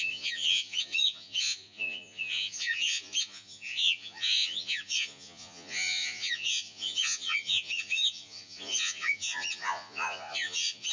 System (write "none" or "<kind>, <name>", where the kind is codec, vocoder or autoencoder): vocoder, Vocos